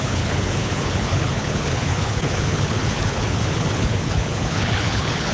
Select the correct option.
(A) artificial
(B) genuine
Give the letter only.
A